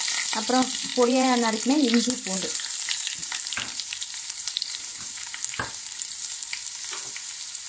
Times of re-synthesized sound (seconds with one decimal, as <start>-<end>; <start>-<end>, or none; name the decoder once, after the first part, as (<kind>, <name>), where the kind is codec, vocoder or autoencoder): 0.0-6.4 (vocoder, BigVGAN v2)

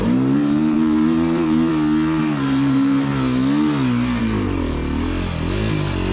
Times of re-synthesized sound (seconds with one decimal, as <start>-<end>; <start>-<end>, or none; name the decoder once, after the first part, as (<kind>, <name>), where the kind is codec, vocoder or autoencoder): 0.0-1.7 (vocoder, BigVGAN v2); 2.2-3.1; 4.2-4.8

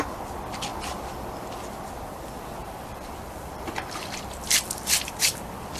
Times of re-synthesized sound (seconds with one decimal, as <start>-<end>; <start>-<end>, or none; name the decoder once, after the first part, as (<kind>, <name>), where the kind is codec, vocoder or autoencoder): 2.6-5.8 (vocoder, BigVGAN v2)